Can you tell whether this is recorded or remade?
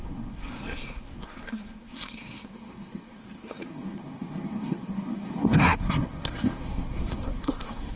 remade